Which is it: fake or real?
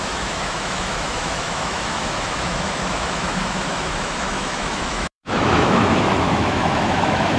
fake